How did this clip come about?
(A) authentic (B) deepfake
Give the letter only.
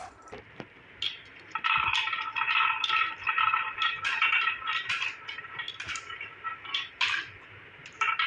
B